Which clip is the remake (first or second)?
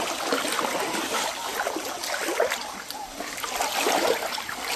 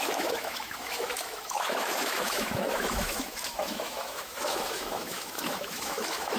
second